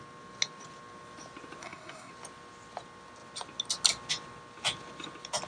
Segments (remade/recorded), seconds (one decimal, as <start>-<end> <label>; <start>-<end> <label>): 0.0-1.6 recorded; 1.6-2.1 remade; 2.1-5.5 recorded